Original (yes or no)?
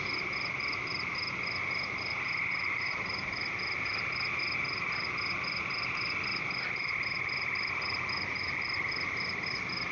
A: yes